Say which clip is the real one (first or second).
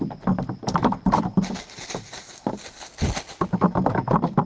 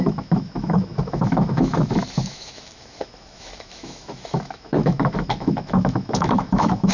first